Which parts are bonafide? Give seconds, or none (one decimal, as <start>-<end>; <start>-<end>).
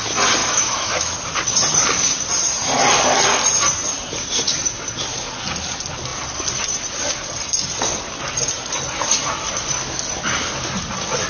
0.0-0.4; 1.1-11.3